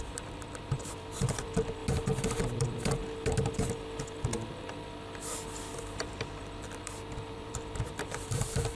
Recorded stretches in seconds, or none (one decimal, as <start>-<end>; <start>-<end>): 1.8-2.4; 3.0-5.8